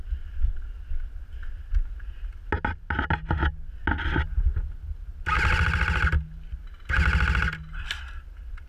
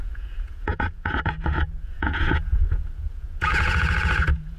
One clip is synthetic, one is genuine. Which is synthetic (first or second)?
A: second